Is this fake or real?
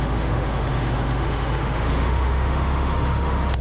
fake